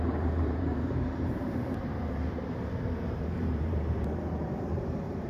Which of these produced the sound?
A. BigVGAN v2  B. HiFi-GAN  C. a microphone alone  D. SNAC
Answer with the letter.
A